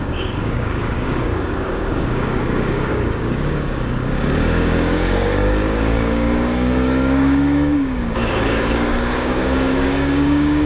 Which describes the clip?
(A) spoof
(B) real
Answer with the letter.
A